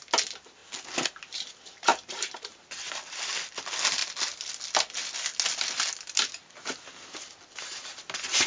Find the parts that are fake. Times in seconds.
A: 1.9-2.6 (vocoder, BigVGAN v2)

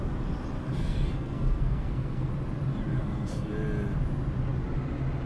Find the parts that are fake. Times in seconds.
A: 0.8-2.3 (codec, SNAC); 2.9-3.5

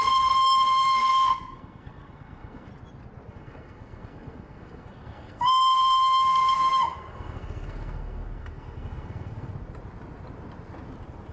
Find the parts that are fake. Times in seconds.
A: 0.0-2.7 (codec, SNAC); 3.3-9.5

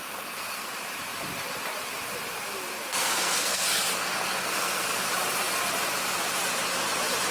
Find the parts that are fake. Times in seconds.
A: 0.0-0.7 (codec, SNAC); 2.8-5.1

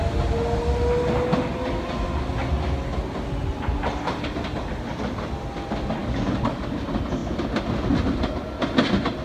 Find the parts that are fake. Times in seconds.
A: 6.0-6.8 (codec, DAC)

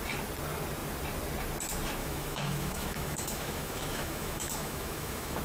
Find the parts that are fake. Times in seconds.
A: 2.0-5.4 (autoencoder, DAC-VAE)

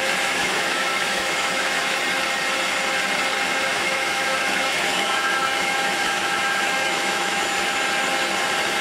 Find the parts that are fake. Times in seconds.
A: 0.4-2.0 (autoencoder, DAC-VAE); 3.7-7.4